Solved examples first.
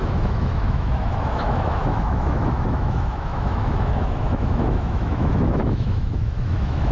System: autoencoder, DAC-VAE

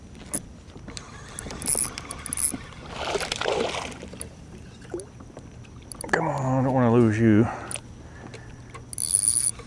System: none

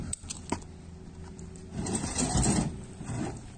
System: none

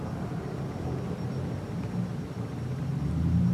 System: none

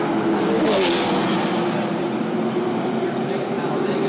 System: none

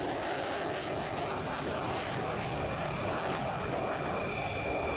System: none